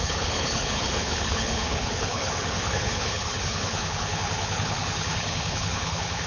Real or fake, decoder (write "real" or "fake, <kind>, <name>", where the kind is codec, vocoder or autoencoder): fake, codec, HILCodec